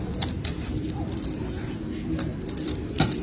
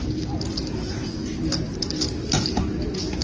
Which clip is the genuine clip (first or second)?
second